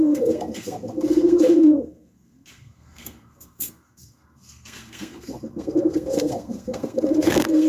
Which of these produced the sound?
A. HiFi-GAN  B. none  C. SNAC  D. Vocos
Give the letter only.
C